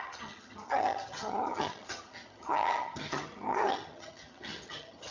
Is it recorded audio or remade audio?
remade